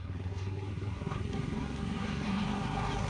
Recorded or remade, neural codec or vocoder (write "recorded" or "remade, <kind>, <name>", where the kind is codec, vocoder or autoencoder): remade, codec, SNAC